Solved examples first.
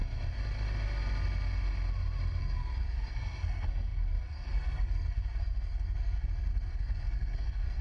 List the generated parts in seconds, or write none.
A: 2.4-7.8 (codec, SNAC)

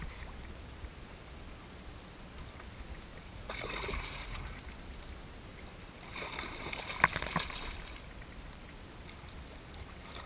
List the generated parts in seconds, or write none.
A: 3.1-4.6 (vocoder, Vocos)

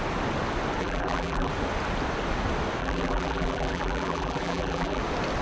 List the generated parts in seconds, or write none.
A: 0.8-1.5 (vocoder, BigVGAN v2); 2.8-5.0

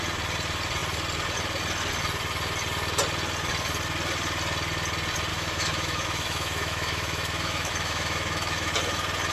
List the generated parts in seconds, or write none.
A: 5.3-8.7 (autoencoder, DAC-VAE)

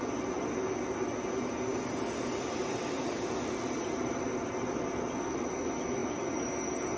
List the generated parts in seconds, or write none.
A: 1.7-4.2 (vocoder, BigVGAN v2); 6.0-6.6

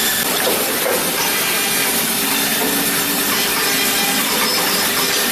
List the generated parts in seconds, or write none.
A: none

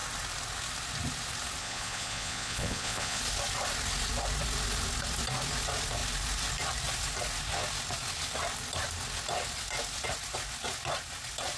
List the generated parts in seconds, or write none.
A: 1.6-3.2 (vocoder, Vocos)

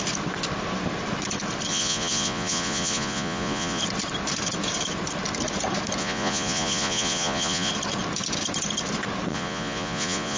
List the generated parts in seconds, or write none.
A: 1.7-3.8 (vocoder, Vocos); 6.0-7.7; 9.3-10.4